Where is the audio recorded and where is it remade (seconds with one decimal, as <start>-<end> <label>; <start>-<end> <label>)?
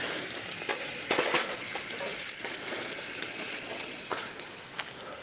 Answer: 0.0-0.7 recorded; 0.7-1.7 remade; 1.7-2.1 recorded; 2.1-4.5 remade; 4.5-5.2 recorded